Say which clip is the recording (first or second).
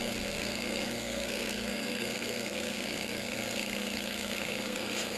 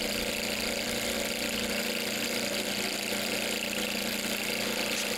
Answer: second